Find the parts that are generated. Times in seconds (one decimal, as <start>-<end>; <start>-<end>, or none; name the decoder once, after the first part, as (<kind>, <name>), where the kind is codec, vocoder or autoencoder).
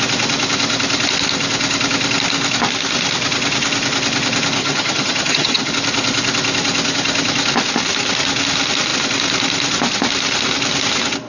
4.6-5.7 (vocoder, HiFi-GAN)